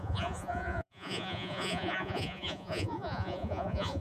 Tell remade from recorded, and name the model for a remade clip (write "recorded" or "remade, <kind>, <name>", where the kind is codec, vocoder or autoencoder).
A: remade, vocoder, Vocos